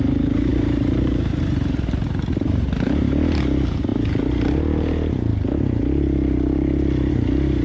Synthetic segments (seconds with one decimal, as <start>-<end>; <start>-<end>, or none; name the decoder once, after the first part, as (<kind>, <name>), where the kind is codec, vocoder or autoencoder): 0.5-2.1 (vocoder, BigVGAN v2)